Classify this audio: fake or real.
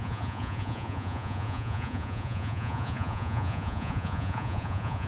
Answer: fake